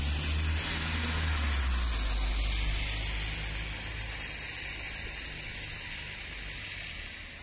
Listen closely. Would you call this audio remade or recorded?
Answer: recorded